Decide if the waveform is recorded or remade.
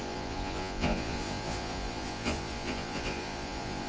remade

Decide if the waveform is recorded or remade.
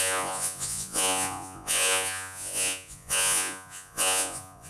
remade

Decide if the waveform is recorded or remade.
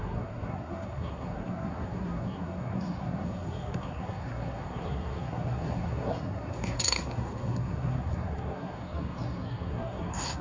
remade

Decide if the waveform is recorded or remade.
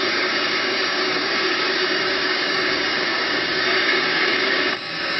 remade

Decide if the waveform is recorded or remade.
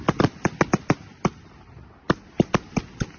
recorded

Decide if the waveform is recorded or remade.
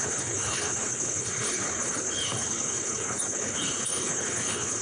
remade